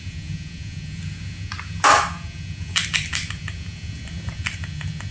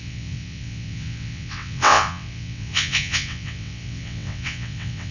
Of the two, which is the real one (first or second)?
first